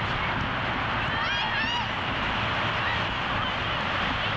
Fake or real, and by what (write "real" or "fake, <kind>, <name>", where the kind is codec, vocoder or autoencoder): real